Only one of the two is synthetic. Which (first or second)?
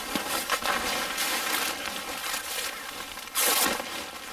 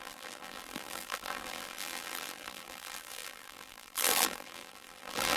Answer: second